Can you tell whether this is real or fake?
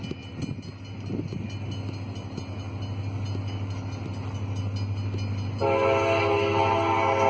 real